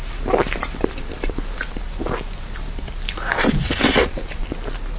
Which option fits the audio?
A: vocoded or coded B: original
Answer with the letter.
B